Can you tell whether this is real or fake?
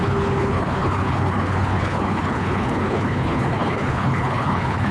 fake